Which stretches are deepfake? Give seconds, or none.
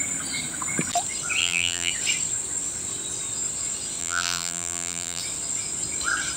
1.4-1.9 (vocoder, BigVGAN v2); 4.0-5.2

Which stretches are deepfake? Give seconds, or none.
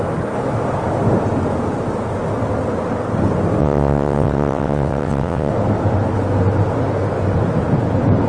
3.6-5.5 (vocoder, WaveNeXt)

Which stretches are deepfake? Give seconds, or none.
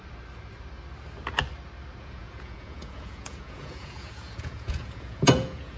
2.0-5.8 (vocoder, Vocos)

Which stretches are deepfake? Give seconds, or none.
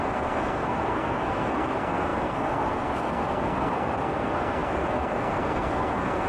0.0-6.3 (codec, SNAC)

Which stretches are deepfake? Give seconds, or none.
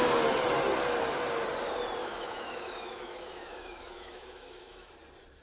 2.0-4.9 (autoencoder, DAC-VAE)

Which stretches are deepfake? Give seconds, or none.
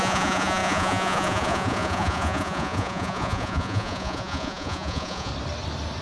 0.0-5.3 (vocoder, Vocos)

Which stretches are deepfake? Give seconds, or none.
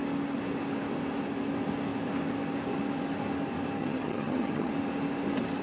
3.8-4.7 (vocoder, HiFi-GAN)